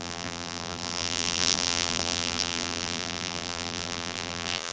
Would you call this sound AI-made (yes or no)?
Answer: yes